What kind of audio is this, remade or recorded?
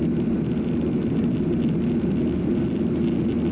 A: recorded